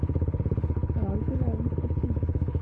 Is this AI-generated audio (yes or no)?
yes